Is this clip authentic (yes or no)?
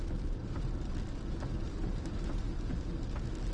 yes